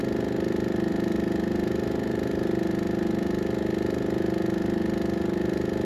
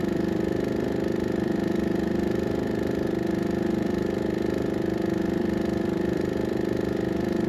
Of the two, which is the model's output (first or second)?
second